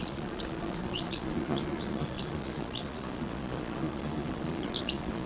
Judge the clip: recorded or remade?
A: remade